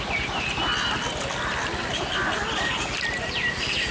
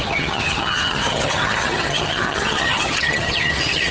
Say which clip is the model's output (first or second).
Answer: second